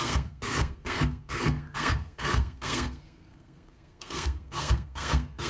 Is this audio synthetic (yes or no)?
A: yes